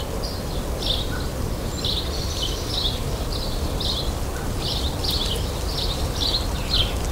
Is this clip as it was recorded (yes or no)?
yes